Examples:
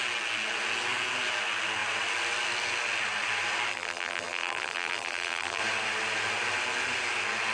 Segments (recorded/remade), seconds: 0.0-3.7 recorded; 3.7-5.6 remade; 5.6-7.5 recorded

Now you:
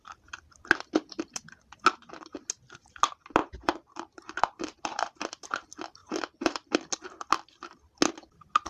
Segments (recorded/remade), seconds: 0.0-3.4 recorded; 3.4-5.2 remade; 5.2-6.0 recorded; 6.0-6.8 remade; 6.8-8.7 recorded

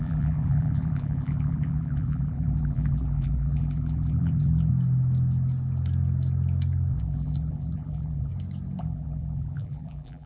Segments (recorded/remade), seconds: 0.0-4.7 remade; 4.7-6.9 recorded; 6.9-8.3 remade; 8.3-8.8 recorded; 8.8-10.3 remade

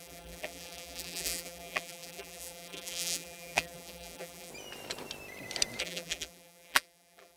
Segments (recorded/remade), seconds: 0.0-4.5 remade; 4.5-5.8 recorded; 5.8-7.4 remade

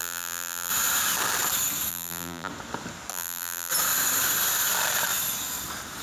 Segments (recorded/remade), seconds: 0.0-0.7 remade; 0.7-1.9 recorded; 1.9-2.5 remade; 2.5-3.1 recorded; 3.1-3.7 remade; 3.7-6.0 recorded

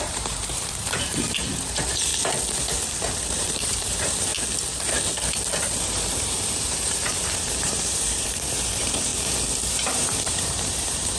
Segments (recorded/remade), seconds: 0.0-2.1 remade; 2.1-3.4 recorded; 3.4-4.3 remade; 4.3-5.9 recorded; 5.9-9.1 remade; 9.1-9.7 recorded; 9.7-11.2 remade